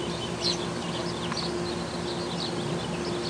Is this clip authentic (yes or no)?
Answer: yes